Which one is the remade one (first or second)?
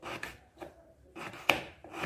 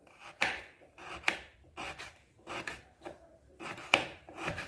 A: second